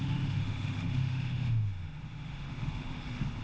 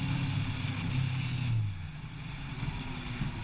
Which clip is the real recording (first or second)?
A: second